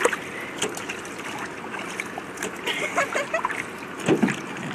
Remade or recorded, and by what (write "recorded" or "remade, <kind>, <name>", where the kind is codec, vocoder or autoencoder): recorded